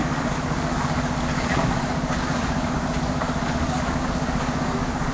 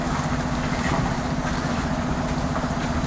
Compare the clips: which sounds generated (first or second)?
first